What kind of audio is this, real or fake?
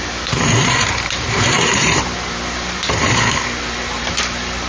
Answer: fake